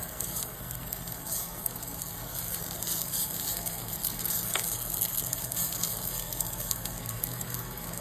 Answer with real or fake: fake